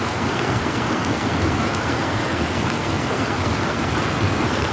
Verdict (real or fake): fake